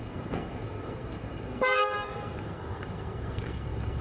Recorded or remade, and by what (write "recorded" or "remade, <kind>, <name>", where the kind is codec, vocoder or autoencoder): remade, codec, SNAC